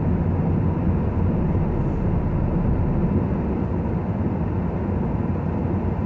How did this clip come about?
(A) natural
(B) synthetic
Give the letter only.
A